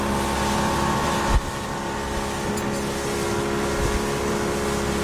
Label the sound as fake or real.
real